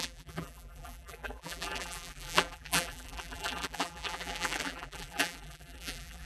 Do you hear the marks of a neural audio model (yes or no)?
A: yes